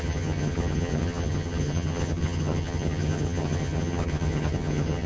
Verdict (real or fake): fake